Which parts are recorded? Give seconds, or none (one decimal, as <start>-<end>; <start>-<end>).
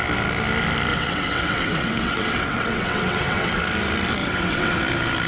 0.0-0.9; 3.6-4.2; 4.8-5.3